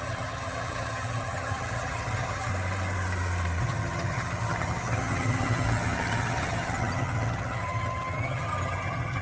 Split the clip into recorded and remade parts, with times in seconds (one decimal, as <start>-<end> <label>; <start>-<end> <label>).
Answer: 0.0-2.5 remade; 2.5-3.6 recorded; 3.6-9.2 remade